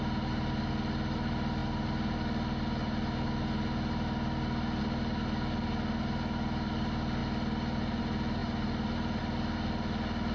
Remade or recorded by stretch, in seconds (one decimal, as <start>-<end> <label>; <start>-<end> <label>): 0.0-10.3 recorded